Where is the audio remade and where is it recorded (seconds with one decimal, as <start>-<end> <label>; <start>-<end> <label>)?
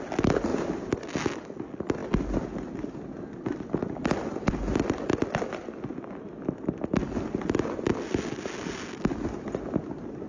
0.0-10.3 recorded